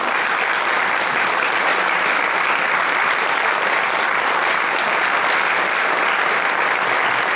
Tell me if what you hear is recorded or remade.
recorded